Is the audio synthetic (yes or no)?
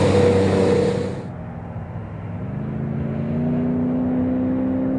no